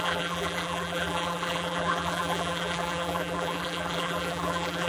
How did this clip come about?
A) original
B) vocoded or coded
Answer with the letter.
B